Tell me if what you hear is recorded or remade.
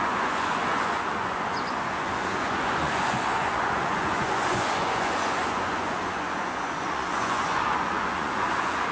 remade